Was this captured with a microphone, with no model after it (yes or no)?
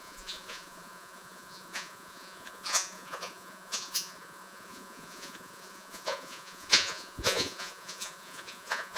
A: no